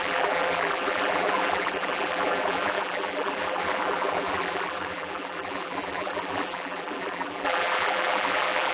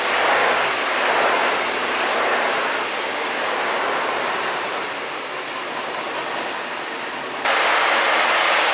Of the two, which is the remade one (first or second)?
first